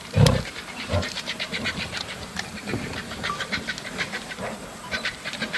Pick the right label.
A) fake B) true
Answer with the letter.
A